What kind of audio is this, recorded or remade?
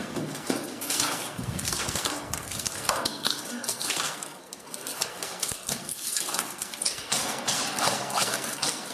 remade